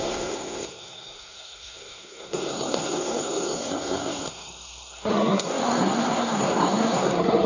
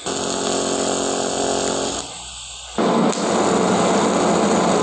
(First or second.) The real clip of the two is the second